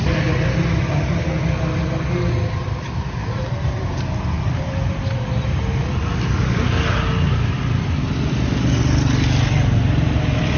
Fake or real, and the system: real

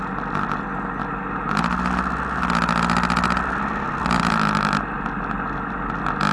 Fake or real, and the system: real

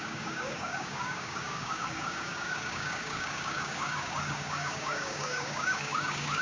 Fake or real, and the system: fake, codec, DAC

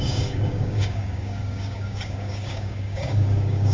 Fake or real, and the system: fake, codec, DAC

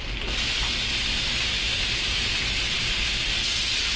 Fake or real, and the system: real